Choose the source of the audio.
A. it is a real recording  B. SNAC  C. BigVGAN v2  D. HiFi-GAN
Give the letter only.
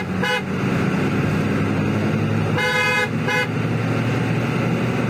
A